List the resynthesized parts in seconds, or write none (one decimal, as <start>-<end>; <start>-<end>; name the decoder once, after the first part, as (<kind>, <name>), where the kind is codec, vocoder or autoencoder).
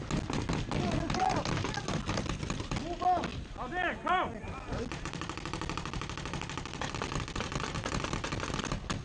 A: none